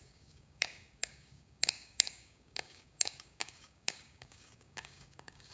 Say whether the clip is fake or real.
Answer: fake